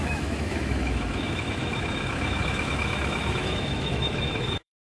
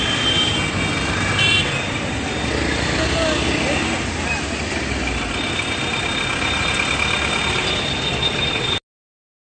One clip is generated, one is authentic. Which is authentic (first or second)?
second